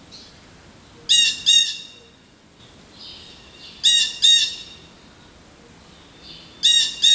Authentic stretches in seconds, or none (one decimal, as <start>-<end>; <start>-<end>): 0.0-1.6; 2.6-7.1